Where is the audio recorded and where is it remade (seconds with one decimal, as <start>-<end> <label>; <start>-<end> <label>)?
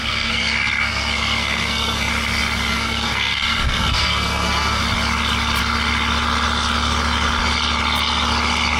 0.0-2.1 remade; 2.1-2.7 recorded; 2.7-4.8 remade; 4.8-8.8 recorded